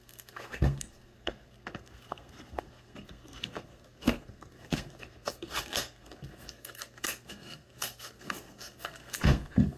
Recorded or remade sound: remade